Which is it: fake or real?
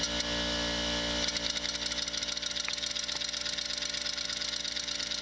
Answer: real